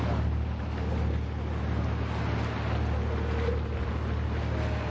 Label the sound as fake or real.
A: real